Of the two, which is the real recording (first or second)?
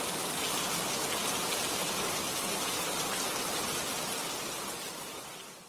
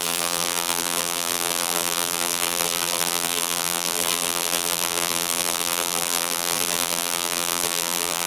first